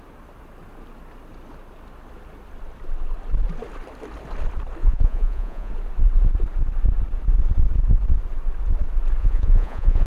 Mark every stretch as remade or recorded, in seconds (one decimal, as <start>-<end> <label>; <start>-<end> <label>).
0.0-4.8 recorded; 4.8-5.7 remade; 5.7-9.2 recorded; 9.2-10.1 remade